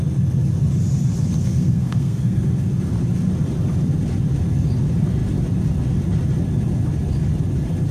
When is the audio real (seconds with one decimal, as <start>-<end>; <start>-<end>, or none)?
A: 0.0-1.4; 2.7-7.9